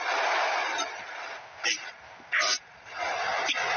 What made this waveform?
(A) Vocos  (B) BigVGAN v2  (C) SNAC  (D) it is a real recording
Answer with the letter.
D